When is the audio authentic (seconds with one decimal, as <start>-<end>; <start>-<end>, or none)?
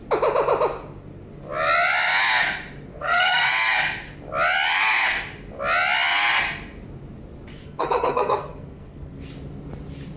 0.0-2.9; 3.5-7.5; 9.3-10.2